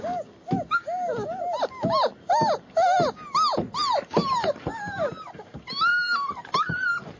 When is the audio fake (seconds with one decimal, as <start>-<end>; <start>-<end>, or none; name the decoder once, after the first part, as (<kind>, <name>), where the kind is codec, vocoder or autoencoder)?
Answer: 3.5-4.1 (vocoder, BigVGAN v2); 5.9-6.5